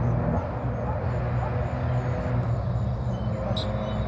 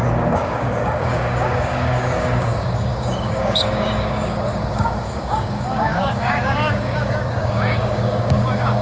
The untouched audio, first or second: first